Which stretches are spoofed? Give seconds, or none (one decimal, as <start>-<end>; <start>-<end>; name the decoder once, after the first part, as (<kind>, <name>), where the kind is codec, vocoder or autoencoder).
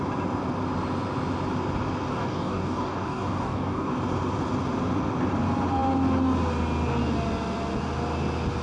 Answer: 2.1-3.9 (codec, DAC)